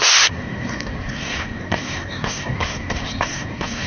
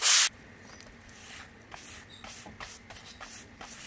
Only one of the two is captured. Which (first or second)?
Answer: second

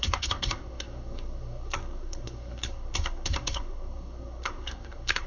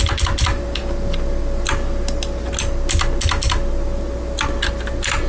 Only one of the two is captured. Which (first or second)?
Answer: second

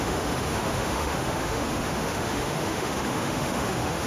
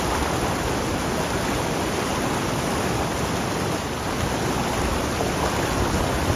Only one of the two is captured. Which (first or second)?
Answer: second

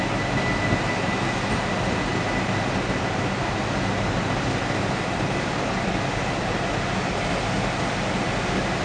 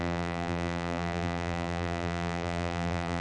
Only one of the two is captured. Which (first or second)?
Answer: first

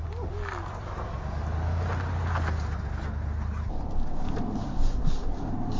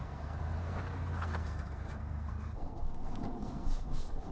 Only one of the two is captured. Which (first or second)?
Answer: first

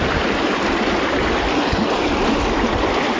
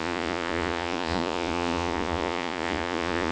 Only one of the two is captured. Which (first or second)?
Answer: first